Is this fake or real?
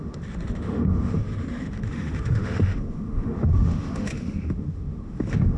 fake